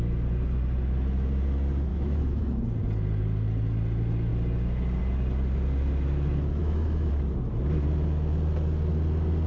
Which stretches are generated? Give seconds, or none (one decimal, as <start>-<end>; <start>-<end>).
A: 1.9-2.4; 6.6-7.1